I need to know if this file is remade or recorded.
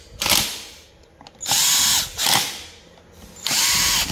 recorded